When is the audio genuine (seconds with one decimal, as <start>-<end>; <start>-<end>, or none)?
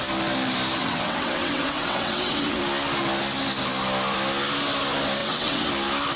0.0-0.8; 2.6-5.2; 5.7-6.2